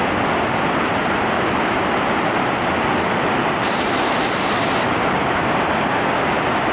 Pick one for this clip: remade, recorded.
recorded